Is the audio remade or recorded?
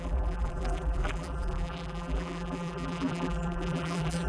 remade